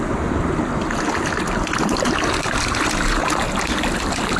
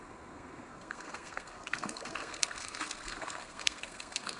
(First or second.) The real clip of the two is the first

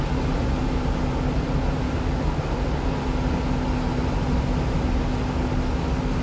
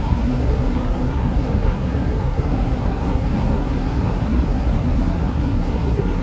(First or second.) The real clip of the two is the first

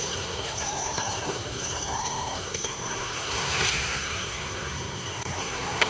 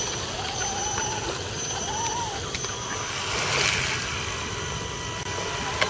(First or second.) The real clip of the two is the second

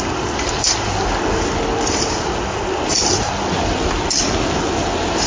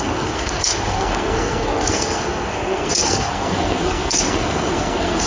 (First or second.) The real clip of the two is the first